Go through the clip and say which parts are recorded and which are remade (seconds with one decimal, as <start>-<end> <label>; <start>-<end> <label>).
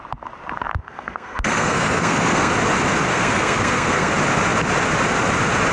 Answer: 0.0-0.8 recorded; 0.8-2.5 remade; 2.5-3.1 recorded; 3.1-4.1 remade; 4.1-5.7 recorded